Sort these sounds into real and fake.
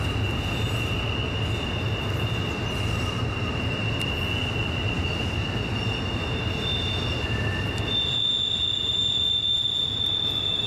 real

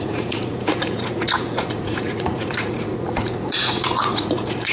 fake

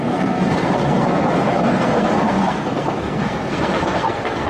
fake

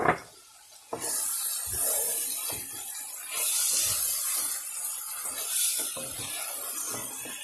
real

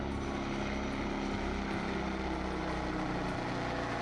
real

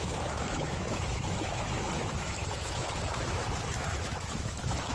fake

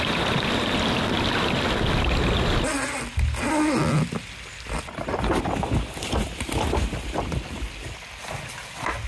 real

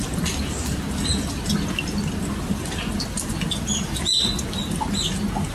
real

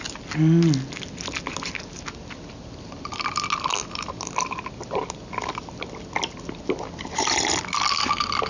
real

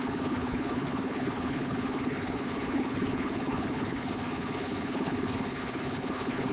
fake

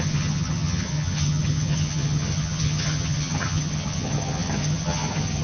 fake